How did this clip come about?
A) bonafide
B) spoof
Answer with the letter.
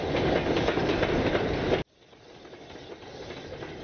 A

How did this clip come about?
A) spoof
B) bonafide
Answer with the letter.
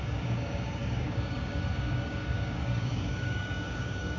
A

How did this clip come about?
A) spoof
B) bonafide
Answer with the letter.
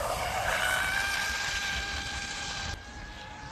B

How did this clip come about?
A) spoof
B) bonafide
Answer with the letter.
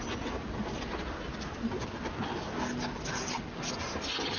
B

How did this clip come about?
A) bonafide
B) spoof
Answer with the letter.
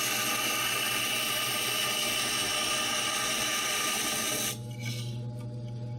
A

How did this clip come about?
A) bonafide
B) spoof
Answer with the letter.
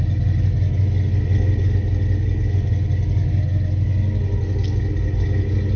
A